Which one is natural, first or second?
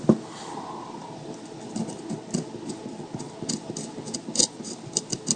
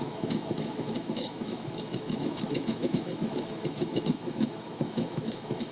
first